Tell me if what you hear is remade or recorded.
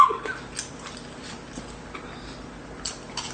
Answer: recorded